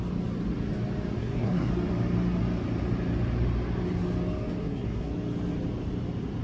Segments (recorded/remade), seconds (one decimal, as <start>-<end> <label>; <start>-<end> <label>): 0.0-1.2 recorded; 1.2-1.7 remade; 1.7-4.6 recorded; 4.6-5.1 remade; 5.1-6.4 recorded

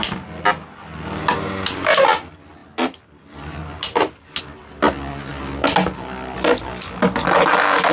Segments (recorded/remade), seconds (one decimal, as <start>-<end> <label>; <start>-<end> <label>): 0.0-7.9 recorded

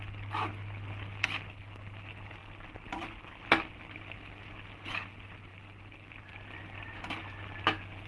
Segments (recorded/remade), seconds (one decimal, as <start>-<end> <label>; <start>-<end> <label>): 0.0-8.1 recorded